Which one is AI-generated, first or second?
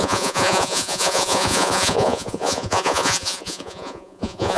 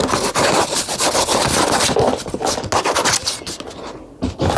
first